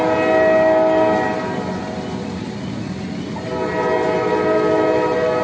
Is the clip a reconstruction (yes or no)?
no